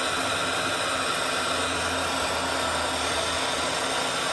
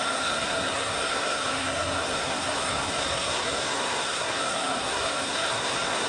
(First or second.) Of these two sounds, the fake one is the second